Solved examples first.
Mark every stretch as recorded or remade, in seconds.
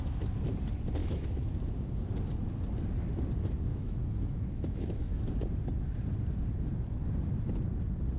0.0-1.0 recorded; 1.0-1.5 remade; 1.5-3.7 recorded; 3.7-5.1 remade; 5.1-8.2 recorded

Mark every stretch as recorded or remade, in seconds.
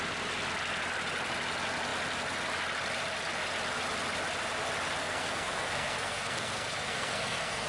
0.0-5.0 recorded; 5.0-7.7 remade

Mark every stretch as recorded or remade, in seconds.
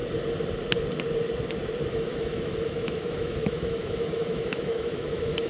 0.0-1.9 recorded; 1.9-5.5 remade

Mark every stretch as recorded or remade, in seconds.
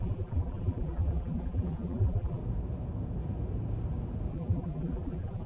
0.0-2.4 remade; 2.4-4.3 recorded; 4.3-5.5 remade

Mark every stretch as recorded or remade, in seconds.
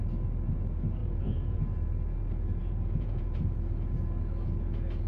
0.0-1.0 recorded; 1.0-1.6 remade; 1.6-2.6 recorded; 2.6-3.4 remade; 3.4-5.1 recorded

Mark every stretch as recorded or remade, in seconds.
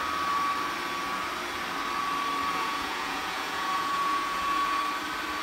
0.0-2.5 recorded; 2.5-4.8 remade; 4.8-5.4 recorded